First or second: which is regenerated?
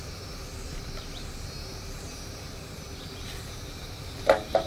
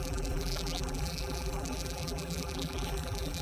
second